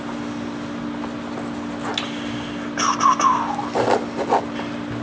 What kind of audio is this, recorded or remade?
recorded